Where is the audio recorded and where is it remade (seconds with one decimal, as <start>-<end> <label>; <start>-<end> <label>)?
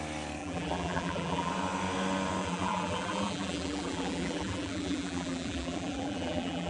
0.0-0.4 recorded; 0.4-1.5 remade; 1.5-2.4 recorded; 2.4-6.7 remade